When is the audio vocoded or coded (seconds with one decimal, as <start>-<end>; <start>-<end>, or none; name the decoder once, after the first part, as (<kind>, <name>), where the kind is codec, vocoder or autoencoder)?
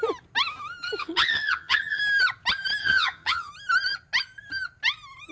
1.0-2.0 (vocoder, HiFi-GAN); 2.8-3.5